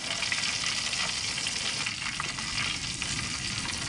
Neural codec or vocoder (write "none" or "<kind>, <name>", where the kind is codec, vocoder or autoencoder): none